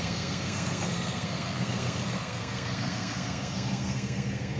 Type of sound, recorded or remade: remade